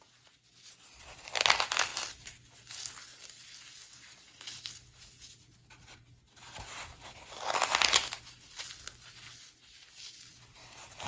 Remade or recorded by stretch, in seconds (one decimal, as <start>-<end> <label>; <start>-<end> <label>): 0.0-11.1 recorded